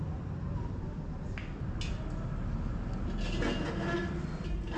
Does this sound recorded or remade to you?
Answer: recorded